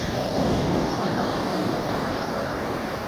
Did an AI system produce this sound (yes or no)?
yes